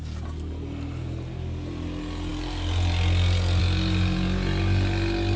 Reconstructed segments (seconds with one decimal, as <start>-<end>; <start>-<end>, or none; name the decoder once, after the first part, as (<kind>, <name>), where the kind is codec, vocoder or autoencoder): none